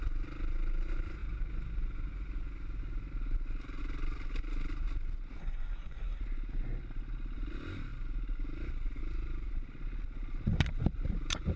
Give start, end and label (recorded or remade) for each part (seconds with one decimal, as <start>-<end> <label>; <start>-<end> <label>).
0.0-5.4 recorded; 5.4-6.2 remade; 6.2-11.6 recorded